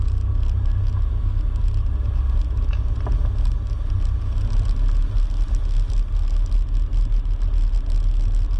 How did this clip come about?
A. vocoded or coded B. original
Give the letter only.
B